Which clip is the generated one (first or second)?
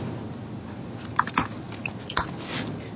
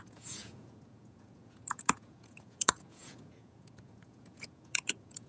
second